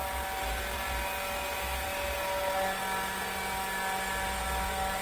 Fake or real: real